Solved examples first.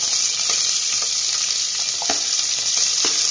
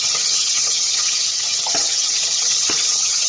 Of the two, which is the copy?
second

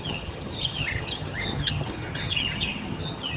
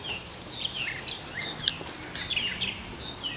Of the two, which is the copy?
first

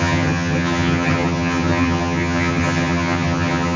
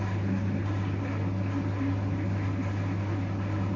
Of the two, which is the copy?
first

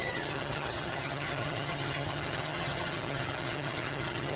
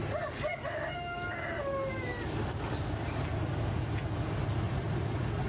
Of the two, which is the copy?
first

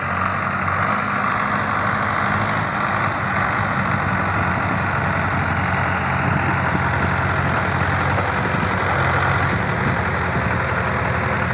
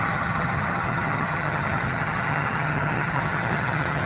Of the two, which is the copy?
second